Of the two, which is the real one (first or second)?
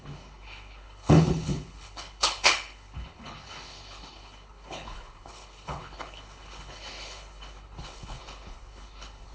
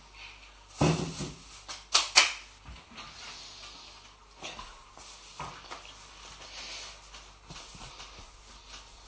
second